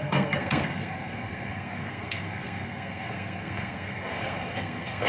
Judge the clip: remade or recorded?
remade